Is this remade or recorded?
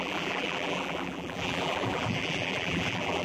remade